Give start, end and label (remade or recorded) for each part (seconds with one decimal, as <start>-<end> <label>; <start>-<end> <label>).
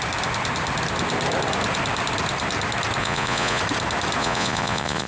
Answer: 0.0-3.0 recorded; 3.0-3.6 remade; 3.6-4.2 recorded; 4.2-5.1 remade